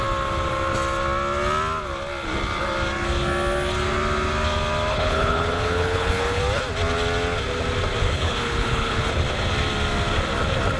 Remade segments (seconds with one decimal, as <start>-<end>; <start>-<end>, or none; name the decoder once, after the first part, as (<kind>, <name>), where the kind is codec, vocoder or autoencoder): 4.9-6.4 (codec, HILCodec); 8.0-9.1